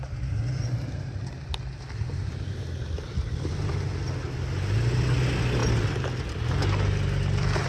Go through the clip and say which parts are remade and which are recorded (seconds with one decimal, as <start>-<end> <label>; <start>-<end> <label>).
0.0-7.7 recorded